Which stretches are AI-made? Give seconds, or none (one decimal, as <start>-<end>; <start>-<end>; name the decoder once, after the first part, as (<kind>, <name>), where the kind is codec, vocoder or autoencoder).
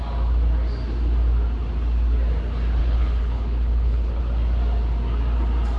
2.8-4.2 (codec, HILCodec)